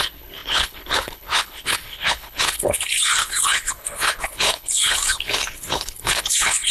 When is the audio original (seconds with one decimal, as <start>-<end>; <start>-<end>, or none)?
none